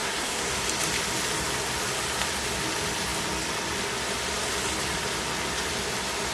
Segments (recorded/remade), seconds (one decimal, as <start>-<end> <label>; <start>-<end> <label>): 0.0-0.5 remade; 0.5-6.3 recorded